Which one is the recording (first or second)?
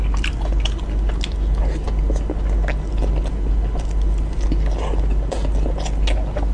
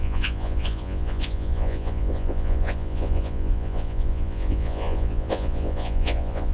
first